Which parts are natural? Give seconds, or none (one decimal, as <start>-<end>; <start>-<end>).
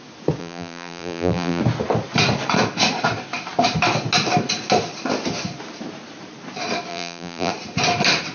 0.0-0.4; 1.6-6.9; 7.5-8.3